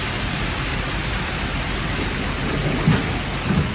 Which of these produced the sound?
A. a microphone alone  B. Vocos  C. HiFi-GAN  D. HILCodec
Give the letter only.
A